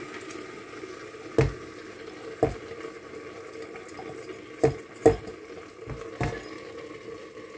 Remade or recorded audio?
recorded